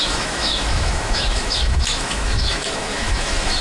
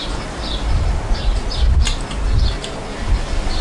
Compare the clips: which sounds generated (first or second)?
first